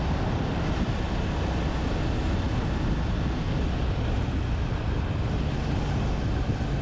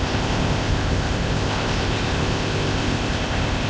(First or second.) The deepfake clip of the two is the second